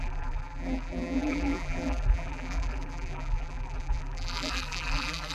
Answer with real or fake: fake